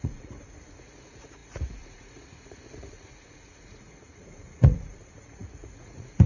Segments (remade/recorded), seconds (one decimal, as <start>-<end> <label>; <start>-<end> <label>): 0.0-6.3 remade